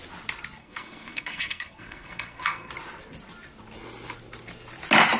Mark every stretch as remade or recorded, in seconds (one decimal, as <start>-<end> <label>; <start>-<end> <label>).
0.0-0.6 recorded; 0.6-2.7 remade; 2.7-5.2 recorded